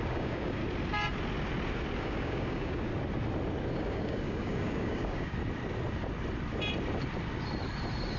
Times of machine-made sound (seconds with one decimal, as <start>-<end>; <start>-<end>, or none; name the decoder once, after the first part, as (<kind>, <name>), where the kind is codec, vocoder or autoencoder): 0.0-0.6 (codec, DAC); 2.0-2.9; 3.7-5.4